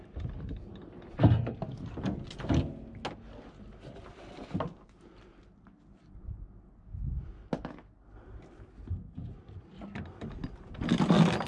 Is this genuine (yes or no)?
yes